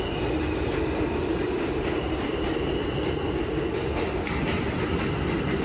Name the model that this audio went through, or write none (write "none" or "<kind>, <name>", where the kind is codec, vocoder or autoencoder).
none